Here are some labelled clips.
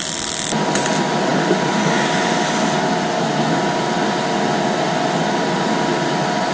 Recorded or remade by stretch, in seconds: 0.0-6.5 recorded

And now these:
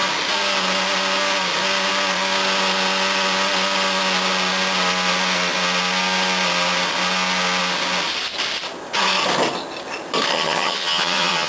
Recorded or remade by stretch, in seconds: 0.0-10.3 recorded; 10.3-11.5 remade

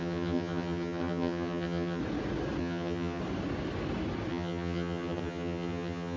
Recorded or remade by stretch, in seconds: 0.0-2.0 remade; 2.0-2.6 recorded; 2.6-3.2 remade; 3.2-4.3 recorded; 4.3-6.2 remade

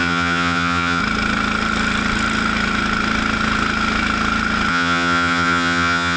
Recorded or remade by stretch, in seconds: 0.0-1.0 remade; 1.0-4.7 recorded; 4.7-6.2 remade

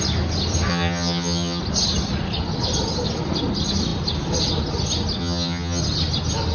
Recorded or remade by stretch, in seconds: 0.0-0.7 recorded; 0.7-1.6 remade; 1.6-5.2 recorded; 5.2-5.8 remade; 5.8-6.5 recorded

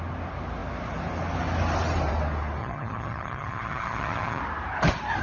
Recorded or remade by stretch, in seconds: 0.0-2.6 recorded; 2.6-4.4 remade; 4.4-5.2 recorded